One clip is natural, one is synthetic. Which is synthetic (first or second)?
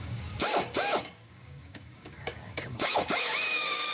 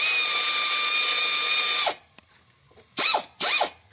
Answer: first